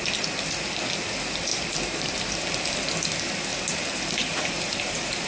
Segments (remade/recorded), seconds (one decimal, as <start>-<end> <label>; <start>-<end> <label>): 0.0-1.5 recorded; 1.5-2.2 remade; 2.2-3.5 recorded; 3.5-5.3 remade